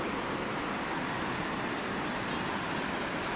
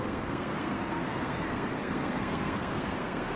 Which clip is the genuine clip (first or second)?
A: first